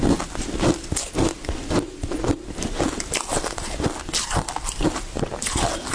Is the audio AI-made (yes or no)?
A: no